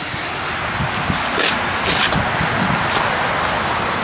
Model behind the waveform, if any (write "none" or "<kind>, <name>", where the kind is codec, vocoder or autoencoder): none